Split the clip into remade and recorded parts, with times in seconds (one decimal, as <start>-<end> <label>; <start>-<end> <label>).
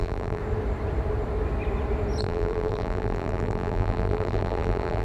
0.0-0.4 remade; 0.4-2.2 recorded; 2.2-5.0 remade